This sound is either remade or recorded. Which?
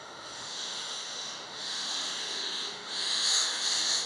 remade